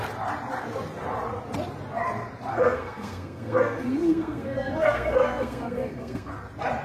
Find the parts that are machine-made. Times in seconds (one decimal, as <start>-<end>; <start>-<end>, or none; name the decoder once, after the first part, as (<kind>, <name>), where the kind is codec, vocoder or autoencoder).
2.5-6.3 (codec, SNAC)